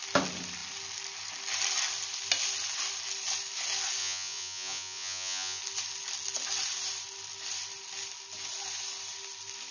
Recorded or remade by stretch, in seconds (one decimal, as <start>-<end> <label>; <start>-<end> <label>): 0.0-4.0 recorded; 4.0-5.6 remade; 5.6-9.7 recorded

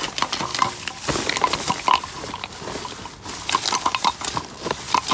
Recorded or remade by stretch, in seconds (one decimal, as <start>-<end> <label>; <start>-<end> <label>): 0.0-5.1 recorded